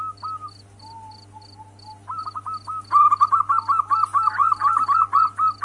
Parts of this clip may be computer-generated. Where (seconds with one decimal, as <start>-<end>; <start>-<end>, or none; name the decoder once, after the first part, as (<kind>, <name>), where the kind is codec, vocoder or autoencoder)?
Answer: none

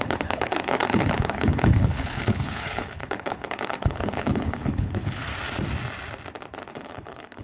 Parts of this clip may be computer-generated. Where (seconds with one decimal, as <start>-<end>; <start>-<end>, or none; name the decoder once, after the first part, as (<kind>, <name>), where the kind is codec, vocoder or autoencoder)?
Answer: 0.0-5.3 (codec, HILCodec); 6.7-7.4

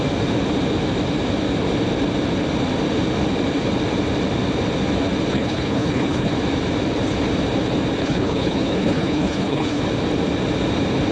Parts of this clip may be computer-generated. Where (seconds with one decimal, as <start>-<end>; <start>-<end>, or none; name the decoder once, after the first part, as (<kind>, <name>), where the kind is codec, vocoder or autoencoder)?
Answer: 5.3-6.3 (codec, HILCodec); 8.0-9.8

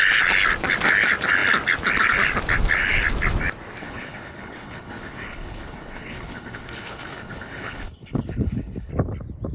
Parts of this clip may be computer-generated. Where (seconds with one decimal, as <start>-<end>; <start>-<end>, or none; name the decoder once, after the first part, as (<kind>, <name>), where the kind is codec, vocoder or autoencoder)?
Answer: 3.8-8.9 (codec, HILCodec)

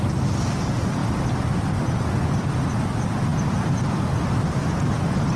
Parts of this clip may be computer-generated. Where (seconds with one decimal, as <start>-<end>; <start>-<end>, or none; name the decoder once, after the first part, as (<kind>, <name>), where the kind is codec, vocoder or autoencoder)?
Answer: none

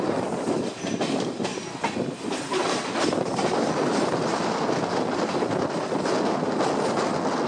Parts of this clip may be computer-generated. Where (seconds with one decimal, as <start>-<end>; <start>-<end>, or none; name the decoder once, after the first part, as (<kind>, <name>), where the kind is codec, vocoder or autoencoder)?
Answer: none

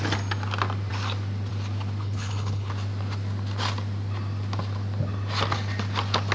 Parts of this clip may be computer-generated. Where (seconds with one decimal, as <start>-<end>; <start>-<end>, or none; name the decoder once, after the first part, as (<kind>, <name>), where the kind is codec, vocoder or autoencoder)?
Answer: 2.0-2.7 (codec, HILCodec)